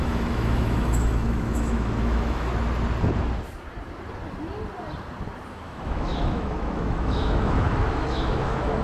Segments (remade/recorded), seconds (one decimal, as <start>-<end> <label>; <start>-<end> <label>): 0.0-2.5 remade; 2.5-5.5 recorded; 5.5-8.8 remade